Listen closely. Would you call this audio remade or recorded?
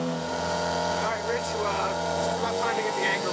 remade